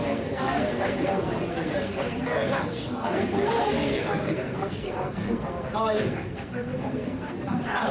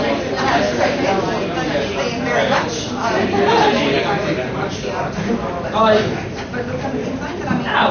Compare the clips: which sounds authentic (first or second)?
second